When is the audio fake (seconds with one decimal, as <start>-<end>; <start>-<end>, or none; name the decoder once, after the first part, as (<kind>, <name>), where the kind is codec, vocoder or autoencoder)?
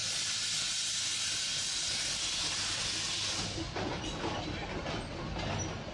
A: none